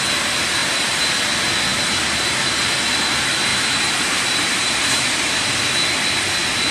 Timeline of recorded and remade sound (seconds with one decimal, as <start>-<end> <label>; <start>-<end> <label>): 0.0-0.6 recorded; 0.6-1.2 remade; 1.2-1.7 recorded; 1.7-2.5 remade; 2.5-3.5 recorded; 3.5-5.6 remade; 5.6-6.7 recorded